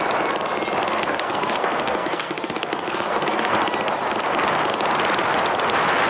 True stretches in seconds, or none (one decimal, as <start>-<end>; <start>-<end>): 0.0-0.9; 3.6-6.1